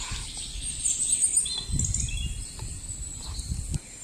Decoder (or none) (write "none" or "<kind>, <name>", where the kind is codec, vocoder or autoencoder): none